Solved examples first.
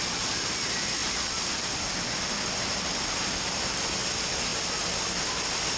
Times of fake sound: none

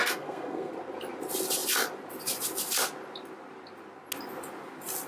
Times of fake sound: 0.0-0.7

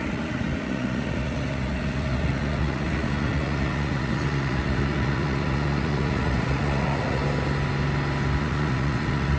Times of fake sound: 0.0-7.2; 8.4-9.4

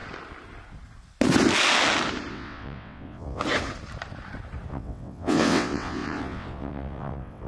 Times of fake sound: 2.3-3.4; 4.7-7.5

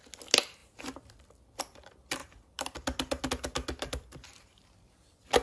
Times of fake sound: none

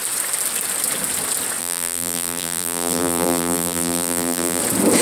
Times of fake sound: 1.6-4.6

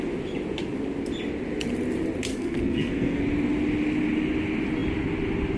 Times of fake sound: 2.3-3.2